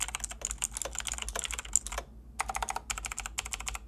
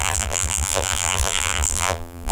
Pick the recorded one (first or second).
first